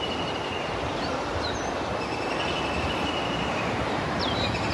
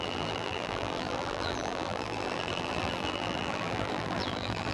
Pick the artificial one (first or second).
second